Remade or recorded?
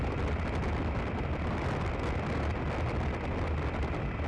recorded